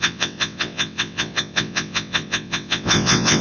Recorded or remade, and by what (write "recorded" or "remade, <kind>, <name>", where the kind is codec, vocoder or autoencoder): remade, vocoder, WaveNeXt